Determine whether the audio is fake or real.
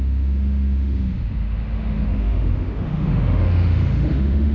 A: fake